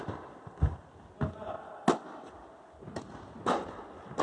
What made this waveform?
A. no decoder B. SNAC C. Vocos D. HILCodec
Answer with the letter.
A